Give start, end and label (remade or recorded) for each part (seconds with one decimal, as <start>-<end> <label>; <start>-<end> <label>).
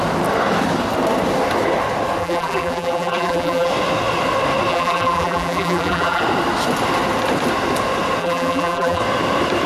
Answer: 0.0-2.2 recorded; 2.2-3.7 remade; 3.7-4.7 recorded; 4.7-6.2 remade; 6.2-8.2 recorded; 8.2-9.0 remade; 9.0-9.7 recorded